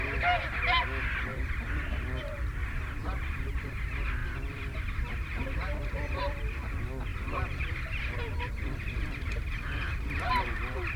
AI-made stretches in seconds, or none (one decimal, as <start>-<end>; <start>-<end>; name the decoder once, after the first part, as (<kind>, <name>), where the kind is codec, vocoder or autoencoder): 1.3-1.9 (vocoder, BigVGAN v2); 3.0-3.7; 4.2-6.2; 7.1-10.3